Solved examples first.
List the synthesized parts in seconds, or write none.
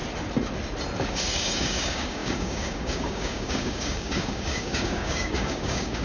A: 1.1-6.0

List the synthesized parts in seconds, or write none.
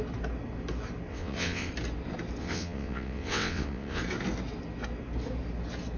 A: 1.1-1.7; 2.4-4.0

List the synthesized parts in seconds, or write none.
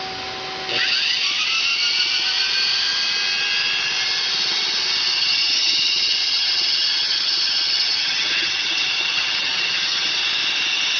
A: 5.1-10.1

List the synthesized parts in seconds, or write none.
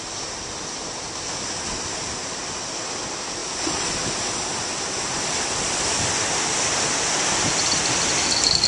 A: none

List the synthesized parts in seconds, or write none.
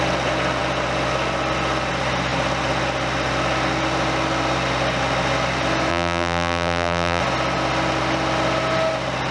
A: 5.9-7.2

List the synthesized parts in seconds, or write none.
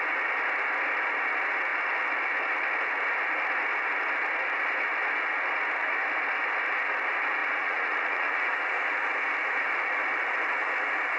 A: 7.4-9.0